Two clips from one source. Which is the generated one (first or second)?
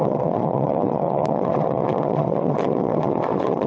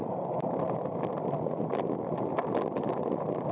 first